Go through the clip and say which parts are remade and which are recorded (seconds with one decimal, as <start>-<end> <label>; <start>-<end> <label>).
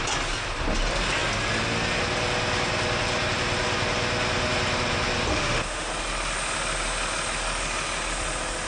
0.0-5.3 recorded; 5.3-5.9 remade; 5.9-8.7 recorded